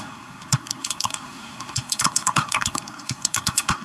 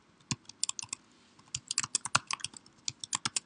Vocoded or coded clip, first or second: first